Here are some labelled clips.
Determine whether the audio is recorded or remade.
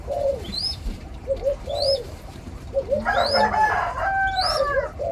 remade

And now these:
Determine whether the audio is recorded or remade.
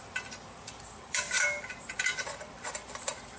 remade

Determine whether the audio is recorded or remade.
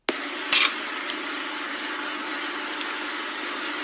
recorded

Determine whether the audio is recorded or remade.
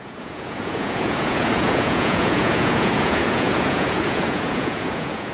remade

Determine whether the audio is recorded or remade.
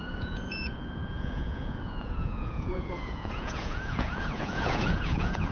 remade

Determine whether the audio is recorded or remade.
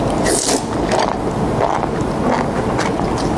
recorded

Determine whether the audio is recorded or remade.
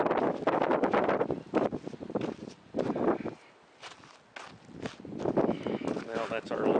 recorded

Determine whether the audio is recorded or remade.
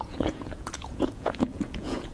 remade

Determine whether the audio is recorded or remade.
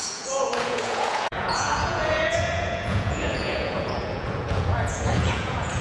remade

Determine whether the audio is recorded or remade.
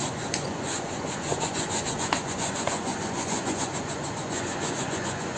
remade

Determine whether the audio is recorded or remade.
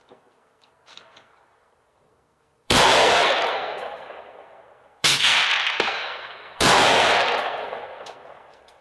remade